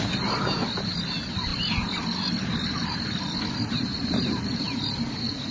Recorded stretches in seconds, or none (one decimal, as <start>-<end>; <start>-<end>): 0.0-5.5